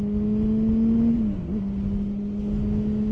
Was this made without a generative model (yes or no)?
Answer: yes